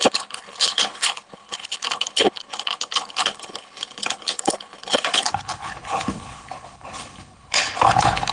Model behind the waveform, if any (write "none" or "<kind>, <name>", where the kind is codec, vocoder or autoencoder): codec, HILCodec